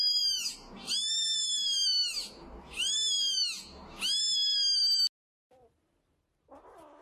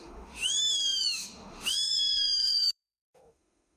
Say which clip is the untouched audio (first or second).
first